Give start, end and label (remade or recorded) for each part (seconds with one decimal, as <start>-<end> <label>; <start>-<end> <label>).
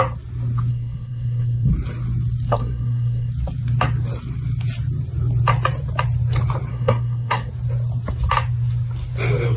0.0-0.7 recorded; 0.7-1.7 remade; 1.7-2.5 recorded; 2.5-3.3 remade; 3.3-6.7 recorded; 6.7-7.5 remade; 7.5-9.6 recorded